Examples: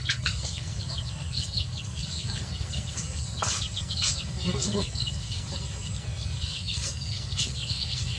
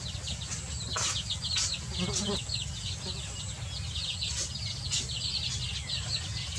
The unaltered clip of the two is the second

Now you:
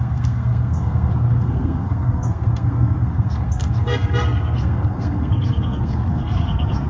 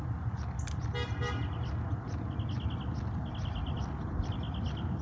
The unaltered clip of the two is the second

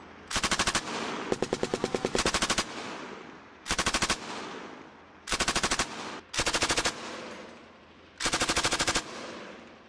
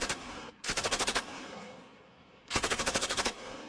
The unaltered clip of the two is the first